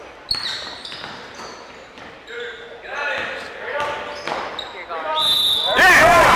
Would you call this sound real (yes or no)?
yes